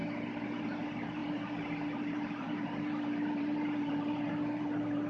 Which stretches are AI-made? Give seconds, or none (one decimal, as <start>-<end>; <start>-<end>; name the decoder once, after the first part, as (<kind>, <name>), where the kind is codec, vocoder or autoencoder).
0.6-5.1 (vocoder, BigVGAN v2)